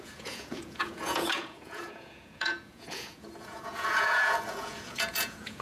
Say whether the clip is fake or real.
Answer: fake